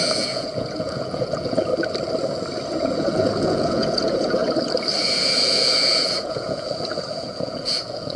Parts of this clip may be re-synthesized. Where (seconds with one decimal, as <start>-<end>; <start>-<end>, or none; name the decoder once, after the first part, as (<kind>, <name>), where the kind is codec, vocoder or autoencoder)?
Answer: 0.0-1.7 (vocoder, Vocos); 2.8-4.4; 5.0-8.2